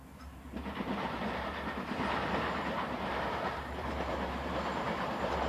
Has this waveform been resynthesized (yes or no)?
yes